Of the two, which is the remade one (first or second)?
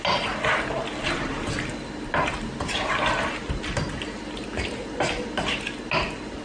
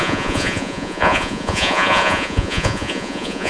second